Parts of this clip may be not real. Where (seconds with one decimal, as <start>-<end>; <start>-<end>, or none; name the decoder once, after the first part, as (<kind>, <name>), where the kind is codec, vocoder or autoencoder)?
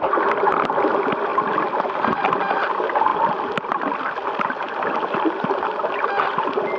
1.3-2.0 (vocoder, BigVGAN v2); 3.1-5.5